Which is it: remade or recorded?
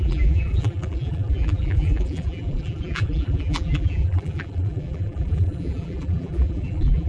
remade